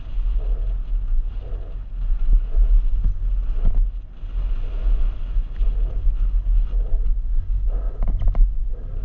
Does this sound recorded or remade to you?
recorded